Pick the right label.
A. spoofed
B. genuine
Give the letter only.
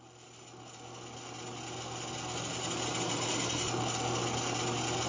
B